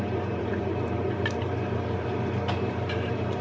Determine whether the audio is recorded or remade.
remade